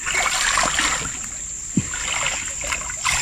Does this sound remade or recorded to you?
recorded